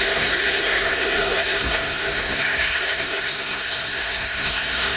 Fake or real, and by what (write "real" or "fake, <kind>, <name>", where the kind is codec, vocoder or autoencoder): fake, codec, SNAC